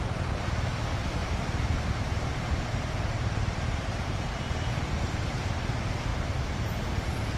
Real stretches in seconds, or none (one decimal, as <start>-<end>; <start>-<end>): none